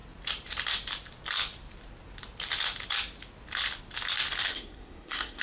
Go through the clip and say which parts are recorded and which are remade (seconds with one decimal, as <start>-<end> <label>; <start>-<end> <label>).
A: 0.0-4.5 recorded; 4.5-5.4 remade